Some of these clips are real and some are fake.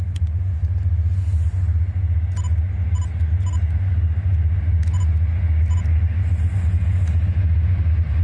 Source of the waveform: real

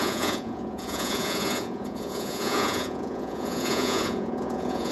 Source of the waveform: fake